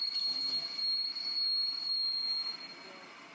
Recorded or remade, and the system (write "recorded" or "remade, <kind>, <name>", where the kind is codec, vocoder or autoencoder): recorded